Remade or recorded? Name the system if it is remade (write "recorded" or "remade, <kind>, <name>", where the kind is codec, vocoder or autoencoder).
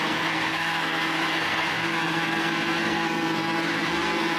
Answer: remade, codec, SNAC